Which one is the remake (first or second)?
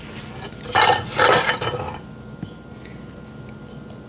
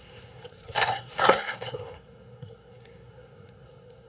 second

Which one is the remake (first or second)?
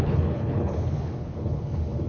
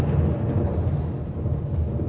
first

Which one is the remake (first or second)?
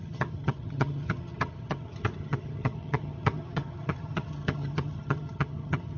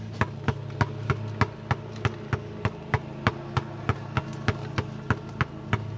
first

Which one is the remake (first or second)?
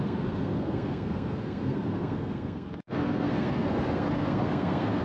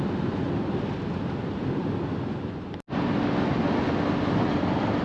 first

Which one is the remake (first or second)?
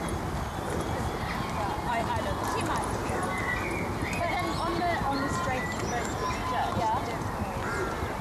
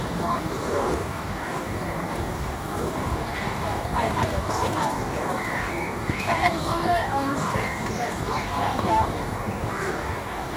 second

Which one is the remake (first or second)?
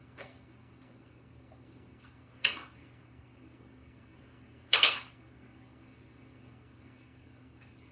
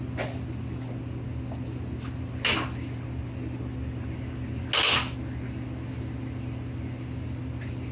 first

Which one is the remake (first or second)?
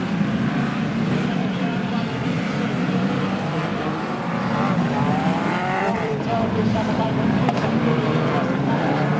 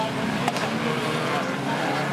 first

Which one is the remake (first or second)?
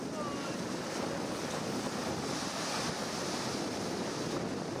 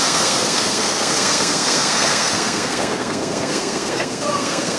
second